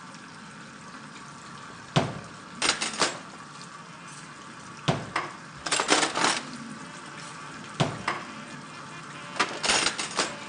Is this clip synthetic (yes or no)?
no